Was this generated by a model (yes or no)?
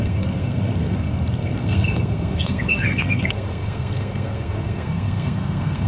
yes